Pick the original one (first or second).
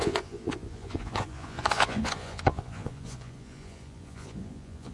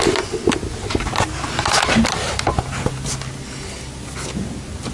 second